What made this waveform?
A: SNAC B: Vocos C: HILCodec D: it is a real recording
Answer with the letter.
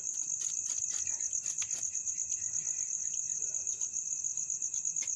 D